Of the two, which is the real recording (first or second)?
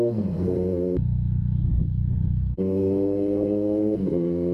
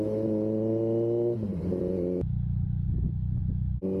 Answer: second